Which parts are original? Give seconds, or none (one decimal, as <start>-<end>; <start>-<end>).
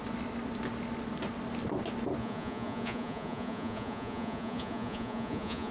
0.0-2.2